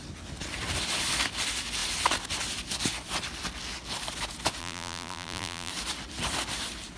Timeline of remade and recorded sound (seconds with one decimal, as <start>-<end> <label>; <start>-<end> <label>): 0.0-4.6 recorded; 4.6-5.7 remade; 5.7-7.0 recorded